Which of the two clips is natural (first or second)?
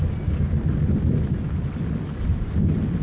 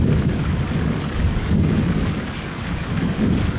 first